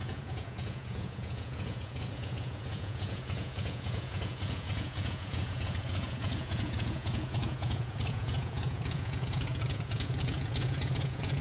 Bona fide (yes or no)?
no